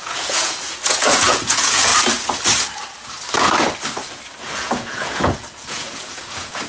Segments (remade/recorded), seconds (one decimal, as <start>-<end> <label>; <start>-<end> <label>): 0.0-1.9 remade; 1.9-4.4 recorded; 4.4-6.7 remade